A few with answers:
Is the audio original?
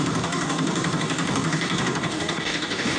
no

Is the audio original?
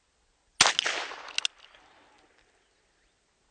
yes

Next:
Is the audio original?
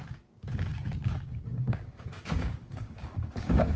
no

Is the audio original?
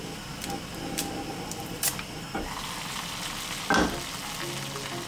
yes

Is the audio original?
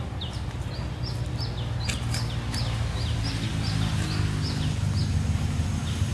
yes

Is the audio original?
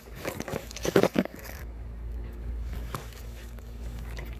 no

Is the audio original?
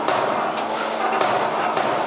yes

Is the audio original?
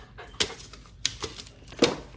yes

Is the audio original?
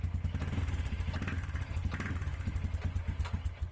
yes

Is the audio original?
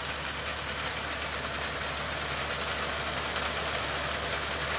yes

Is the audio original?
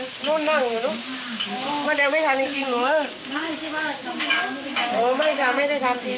no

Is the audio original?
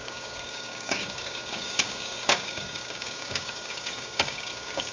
no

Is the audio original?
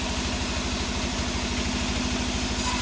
yes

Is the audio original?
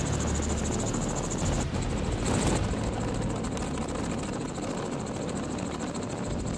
yes